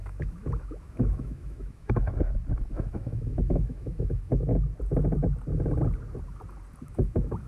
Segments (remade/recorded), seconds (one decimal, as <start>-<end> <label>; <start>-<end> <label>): 0.0-2.1 remade; 2.1-2.7 recorded; 2.7-4.5 remade; 4.5-6.8 recorded; 6.8-7.5 remade